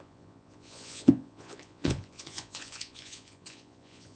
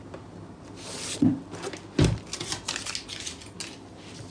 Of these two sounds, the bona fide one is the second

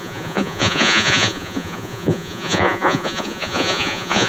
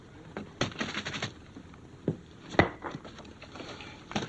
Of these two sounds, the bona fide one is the second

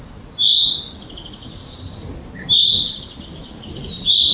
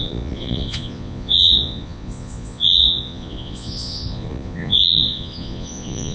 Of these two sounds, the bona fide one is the first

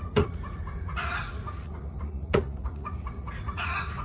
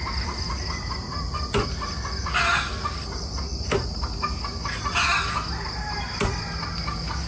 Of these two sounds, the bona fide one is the second